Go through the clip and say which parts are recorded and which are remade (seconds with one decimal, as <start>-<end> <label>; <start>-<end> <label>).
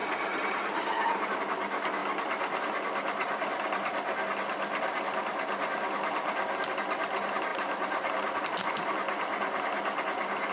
0.0-1.4 remade; 1.4-7.5 recorded; 7.5-8.4 remade; 8.4-10.5 recorded